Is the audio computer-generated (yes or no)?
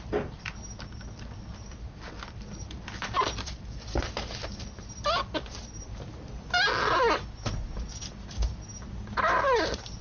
no